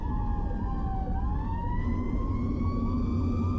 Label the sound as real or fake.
real